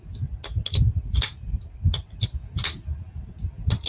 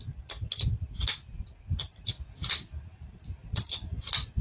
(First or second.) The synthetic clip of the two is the second